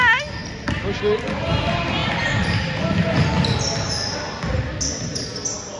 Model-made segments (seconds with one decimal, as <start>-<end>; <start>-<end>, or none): none